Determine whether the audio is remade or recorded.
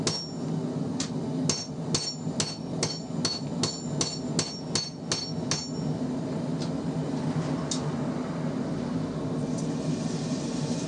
recorded